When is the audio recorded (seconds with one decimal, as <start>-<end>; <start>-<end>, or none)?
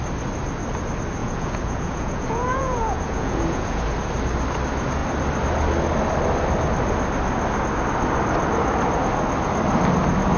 0.0-1.2; 3.8-10.4